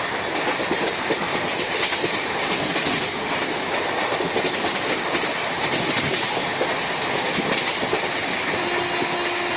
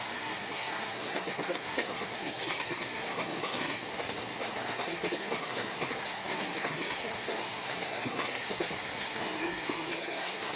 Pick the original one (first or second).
first